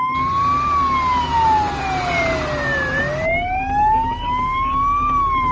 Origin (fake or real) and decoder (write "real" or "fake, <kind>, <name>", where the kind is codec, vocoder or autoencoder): real